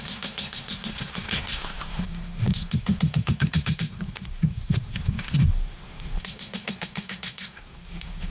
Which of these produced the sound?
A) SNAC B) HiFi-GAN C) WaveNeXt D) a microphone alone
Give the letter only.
A